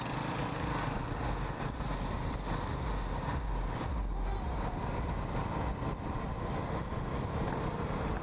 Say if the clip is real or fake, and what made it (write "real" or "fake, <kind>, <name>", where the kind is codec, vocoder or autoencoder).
real